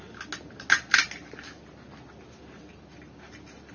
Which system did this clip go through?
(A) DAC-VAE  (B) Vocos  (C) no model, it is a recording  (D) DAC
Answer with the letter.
C